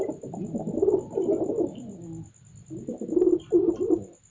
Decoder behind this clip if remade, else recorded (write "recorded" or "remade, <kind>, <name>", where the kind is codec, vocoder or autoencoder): recorded